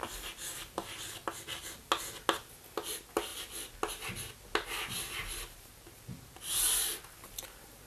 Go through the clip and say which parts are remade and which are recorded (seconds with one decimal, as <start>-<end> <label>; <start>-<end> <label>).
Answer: 0.0-7.9 recorded